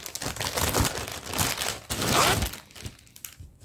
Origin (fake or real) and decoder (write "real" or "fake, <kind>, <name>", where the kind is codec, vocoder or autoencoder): real